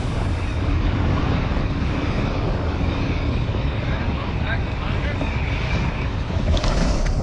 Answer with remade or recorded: remade